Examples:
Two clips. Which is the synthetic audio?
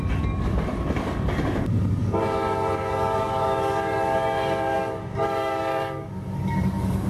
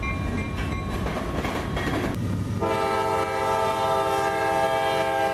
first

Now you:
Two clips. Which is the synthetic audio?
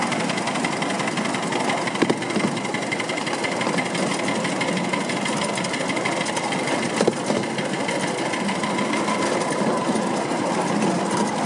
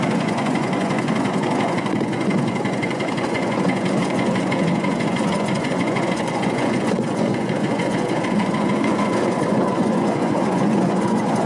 second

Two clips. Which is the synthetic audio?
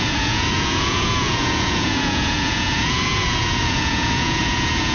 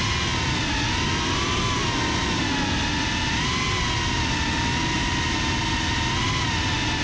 first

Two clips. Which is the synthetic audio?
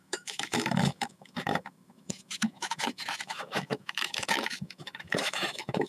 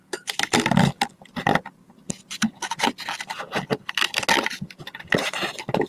first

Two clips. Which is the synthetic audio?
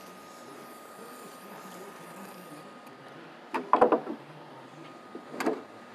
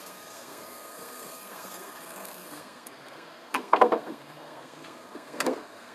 second